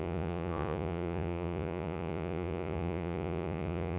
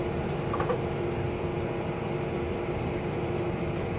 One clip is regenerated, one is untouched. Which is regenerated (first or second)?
first